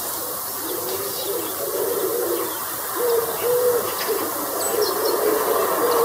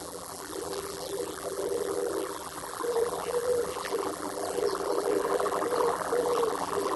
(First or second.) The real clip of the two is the first